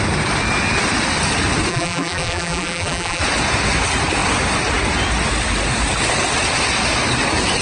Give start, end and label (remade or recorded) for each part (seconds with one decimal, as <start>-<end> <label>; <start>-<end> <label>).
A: 0.0-1.7 recorded; 1.7-3.2 remade; 3.2-7.6 recorded